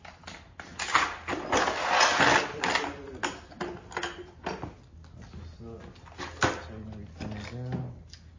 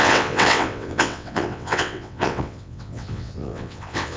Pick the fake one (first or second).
second